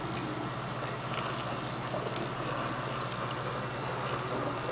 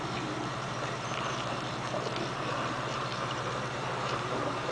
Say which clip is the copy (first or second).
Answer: second